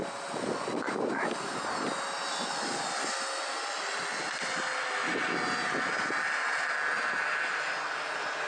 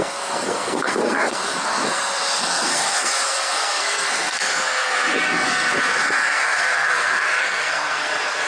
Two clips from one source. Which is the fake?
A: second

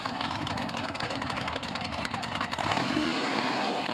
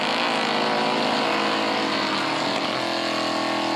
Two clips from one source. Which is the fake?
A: first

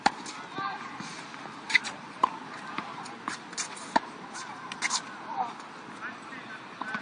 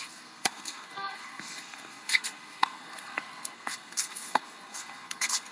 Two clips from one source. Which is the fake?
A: second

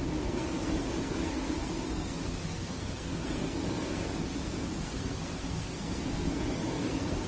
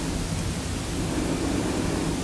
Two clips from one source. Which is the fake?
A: first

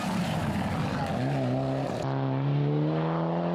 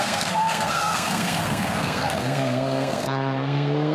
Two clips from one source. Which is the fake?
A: second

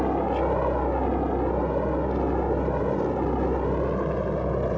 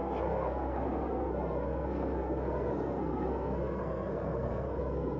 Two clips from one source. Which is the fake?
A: second